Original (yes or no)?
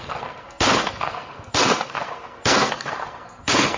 no